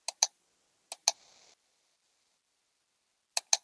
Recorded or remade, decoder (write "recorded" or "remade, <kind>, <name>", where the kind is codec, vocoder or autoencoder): recorded